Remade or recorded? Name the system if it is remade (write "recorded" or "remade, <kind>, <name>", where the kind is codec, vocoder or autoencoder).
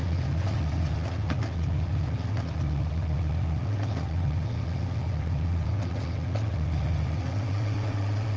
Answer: remade, vocoder, WaveNeXt